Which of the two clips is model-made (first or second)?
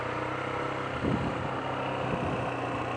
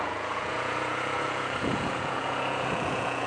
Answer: second